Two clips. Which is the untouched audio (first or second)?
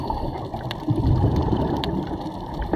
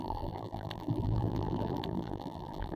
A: first